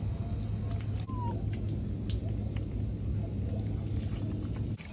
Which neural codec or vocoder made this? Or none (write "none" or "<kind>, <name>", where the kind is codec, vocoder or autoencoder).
none